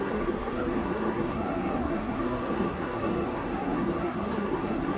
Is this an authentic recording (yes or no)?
no